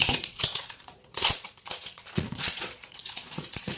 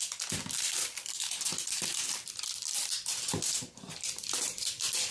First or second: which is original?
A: second